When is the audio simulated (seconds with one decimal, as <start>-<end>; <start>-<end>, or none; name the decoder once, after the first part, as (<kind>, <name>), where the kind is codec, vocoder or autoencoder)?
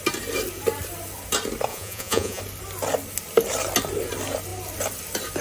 1.7-2.4 (vocoder, Vocos)